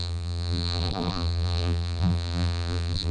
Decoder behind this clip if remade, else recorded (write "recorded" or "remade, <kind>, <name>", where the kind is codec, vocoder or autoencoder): remade, vocoder, BigVGAN v2